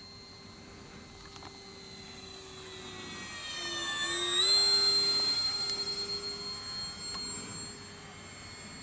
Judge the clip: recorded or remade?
recorded